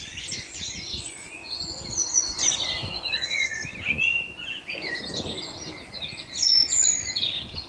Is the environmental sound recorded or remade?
remade